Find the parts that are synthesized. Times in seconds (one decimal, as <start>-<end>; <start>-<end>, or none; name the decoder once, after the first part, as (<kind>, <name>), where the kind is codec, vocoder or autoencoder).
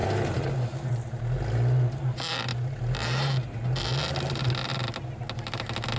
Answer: none